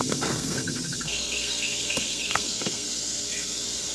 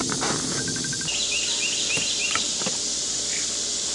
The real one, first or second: second